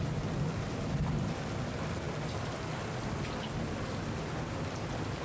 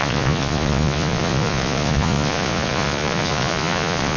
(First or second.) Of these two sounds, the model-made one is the second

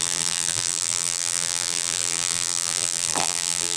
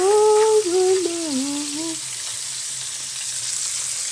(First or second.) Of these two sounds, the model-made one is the first